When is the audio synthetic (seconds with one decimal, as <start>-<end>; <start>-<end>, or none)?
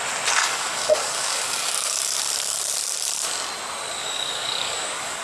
0.4-2.2; 4.0-5.2